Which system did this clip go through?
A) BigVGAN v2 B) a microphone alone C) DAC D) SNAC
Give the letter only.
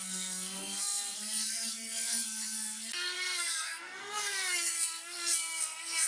D